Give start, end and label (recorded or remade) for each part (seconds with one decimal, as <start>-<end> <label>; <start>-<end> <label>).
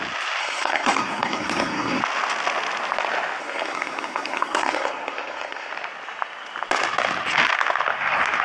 0.0-0.4 recorded; 0.4-2.0 remade; 2.0-3.4 recorded; 3.4-5.7 remade; 5.7-8.4 recorded